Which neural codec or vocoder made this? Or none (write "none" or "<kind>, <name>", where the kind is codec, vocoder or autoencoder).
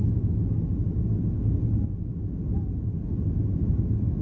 none